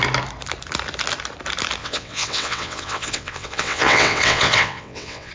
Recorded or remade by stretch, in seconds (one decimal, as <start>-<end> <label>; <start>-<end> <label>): 0.0-1.8 recorded; 1.8-5.3 remade